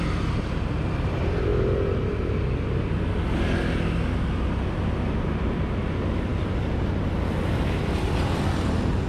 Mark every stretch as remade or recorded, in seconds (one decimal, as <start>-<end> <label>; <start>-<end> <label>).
0.0-9.1 recorded